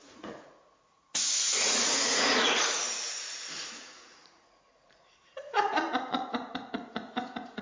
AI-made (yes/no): yes